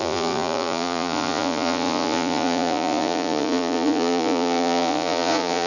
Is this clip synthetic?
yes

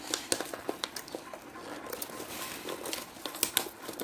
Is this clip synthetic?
no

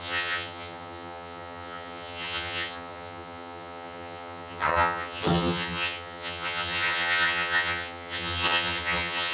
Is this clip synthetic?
yes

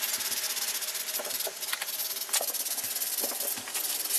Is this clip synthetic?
no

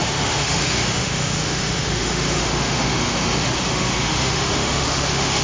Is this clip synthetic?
yes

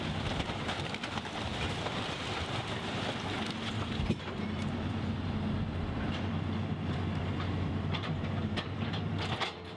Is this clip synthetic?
yes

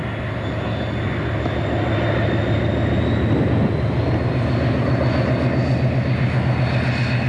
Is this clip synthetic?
no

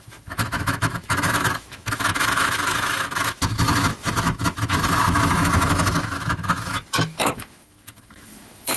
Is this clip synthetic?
yes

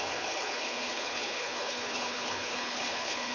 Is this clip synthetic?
yes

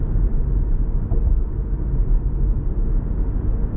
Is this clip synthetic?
no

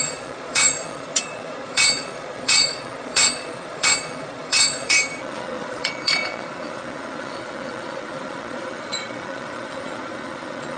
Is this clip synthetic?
yes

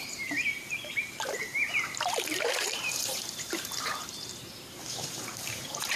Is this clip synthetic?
yes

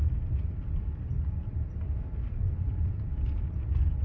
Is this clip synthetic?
yes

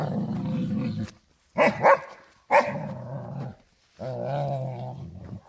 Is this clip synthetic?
no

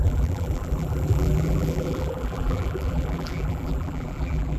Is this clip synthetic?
yes